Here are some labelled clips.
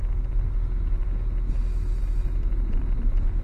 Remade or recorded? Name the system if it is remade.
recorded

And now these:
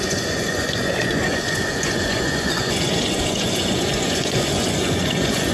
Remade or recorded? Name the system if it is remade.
remade, vocoder, Vocos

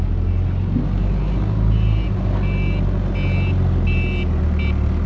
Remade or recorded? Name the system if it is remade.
recorded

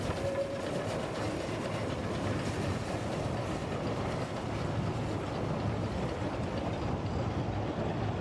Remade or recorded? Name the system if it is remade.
recorded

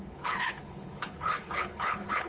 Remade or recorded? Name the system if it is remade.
remade, codec, HILCodec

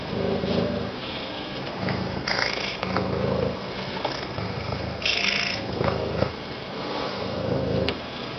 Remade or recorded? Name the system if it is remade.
remade, codec, SNAC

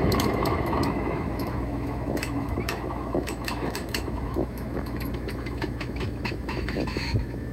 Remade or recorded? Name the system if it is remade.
remade, autoencoder, DAC-VAE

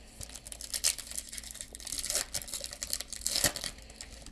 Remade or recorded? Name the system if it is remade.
recorded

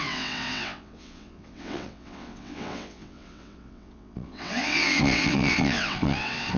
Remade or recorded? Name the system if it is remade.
remade, vocoder, WaveNeXt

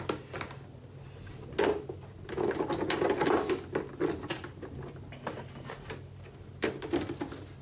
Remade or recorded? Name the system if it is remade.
recorded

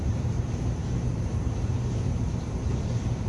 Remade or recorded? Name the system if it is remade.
remade, vocoder, BigVGAN v2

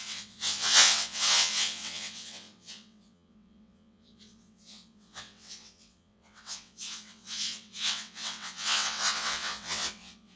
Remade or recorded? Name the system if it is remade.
remade, vocoder, WaveNeXt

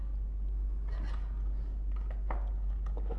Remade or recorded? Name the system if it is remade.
recorded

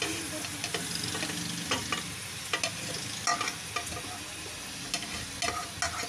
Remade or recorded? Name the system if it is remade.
recorded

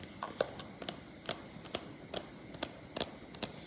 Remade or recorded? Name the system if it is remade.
recorded